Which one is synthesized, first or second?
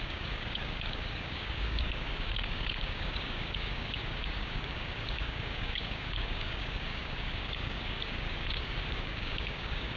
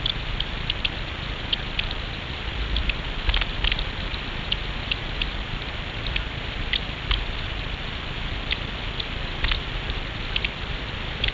first